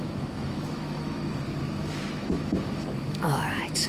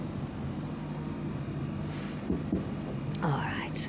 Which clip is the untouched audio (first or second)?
second